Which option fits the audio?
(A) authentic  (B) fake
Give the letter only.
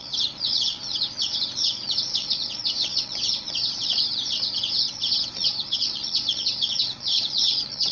B